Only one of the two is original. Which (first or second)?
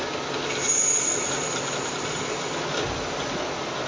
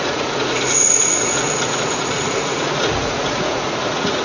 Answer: first